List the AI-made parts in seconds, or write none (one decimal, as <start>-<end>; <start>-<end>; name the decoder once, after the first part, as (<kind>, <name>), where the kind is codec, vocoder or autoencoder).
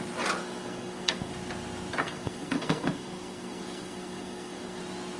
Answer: 0.4-1.3 (codec, SNAC); 2.0-4.8